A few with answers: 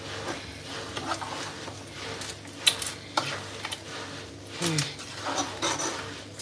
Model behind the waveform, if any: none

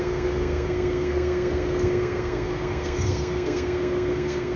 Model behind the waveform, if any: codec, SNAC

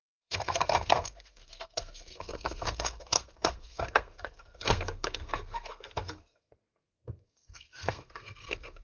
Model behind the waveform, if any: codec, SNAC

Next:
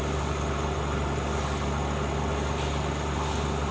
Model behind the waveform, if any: none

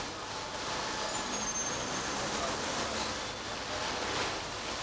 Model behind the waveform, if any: none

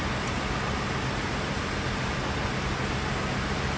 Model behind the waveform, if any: none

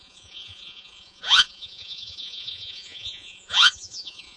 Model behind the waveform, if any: vocoder, Vocos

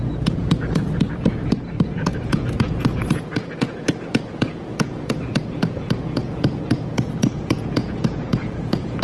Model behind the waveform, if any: vocoder, Vocos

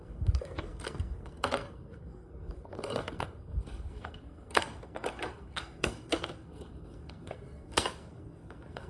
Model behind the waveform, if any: codec, SNAC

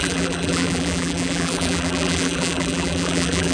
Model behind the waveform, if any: vocoder, BigVGAN v2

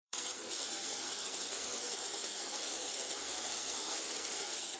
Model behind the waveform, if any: codec, SNAC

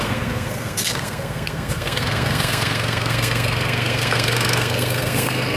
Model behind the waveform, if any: codec, SNAC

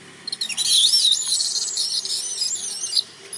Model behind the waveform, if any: none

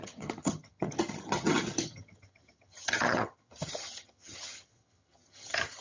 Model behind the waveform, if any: vocoder, HiFi-GAN